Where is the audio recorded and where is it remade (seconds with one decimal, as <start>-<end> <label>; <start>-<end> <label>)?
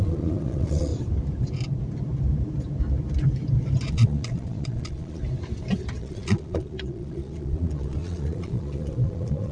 0.0-0.9 remade; 0.9-3.9 recorded; 3.9-5.2 remade; 5.2-6.0 recorded; 6.0-9.5 remade